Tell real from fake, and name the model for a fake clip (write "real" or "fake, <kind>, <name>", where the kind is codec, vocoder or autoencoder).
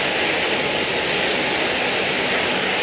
real